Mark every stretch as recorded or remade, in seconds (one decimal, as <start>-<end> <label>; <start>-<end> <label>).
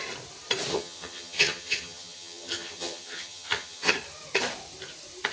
0.0-0.7 recorded; 0.7-3.9 remade; 3.9-5.3 recorded